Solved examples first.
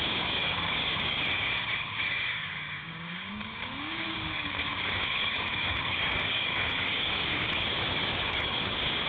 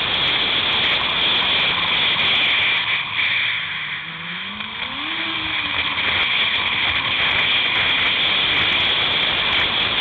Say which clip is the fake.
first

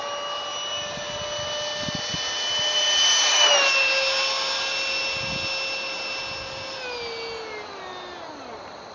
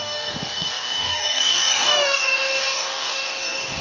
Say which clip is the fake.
second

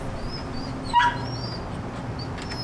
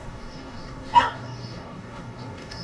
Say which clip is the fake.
second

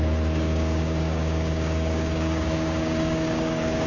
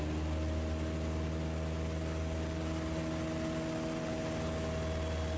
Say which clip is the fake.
first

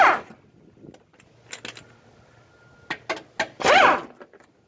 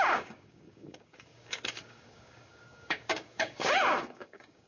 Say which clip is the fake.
second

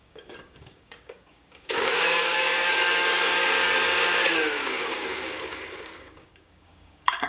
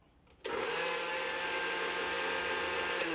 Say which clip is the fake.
first